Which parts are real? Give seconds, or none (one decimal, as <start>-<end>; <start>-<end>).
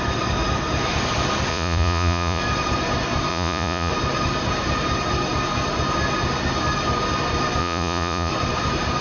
0.0-1.5; 2.4-3.3; 3.9-7.6; 8.3-9.0